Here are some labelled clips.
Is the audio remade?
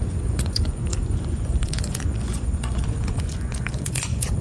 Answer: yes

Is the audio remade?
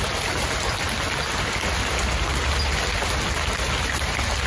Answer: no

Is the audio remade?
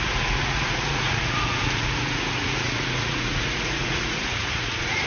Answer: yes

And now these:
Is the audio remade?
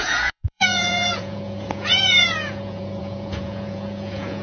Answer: yes